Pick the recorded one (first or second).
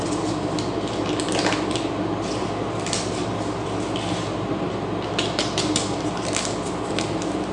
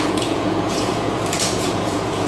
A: first